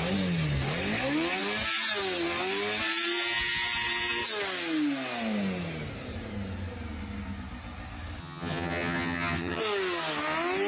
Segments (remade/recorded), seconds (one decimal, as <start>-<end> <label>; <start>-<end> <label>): 0.0-8.2 recorded; 8.2-9.6 remade; 9.6-10.7 recorded